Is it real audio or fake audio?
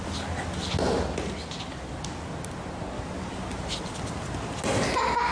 real